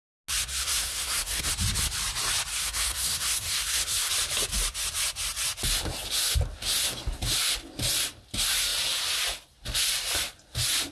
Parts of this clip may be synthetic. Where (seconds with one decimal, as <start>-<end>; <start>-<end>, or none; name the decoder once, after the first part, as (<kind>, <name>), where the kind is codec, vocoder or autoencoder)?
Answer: 0.5-1.5 (codec, SNAC); 2.5-4.1